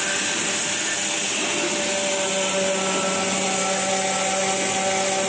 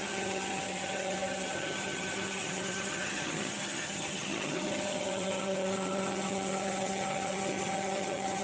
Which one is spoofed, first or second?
second